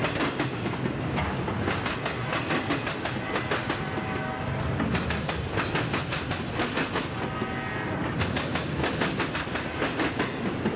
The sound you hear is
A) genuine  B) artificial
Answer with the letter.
A